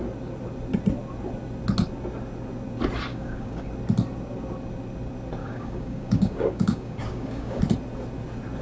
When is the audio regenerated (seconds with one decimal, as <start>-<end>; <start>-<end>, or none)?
3.1-3.7; 5.4-7.6